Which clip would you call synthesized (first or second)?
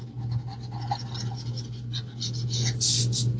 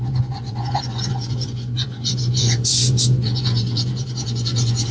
second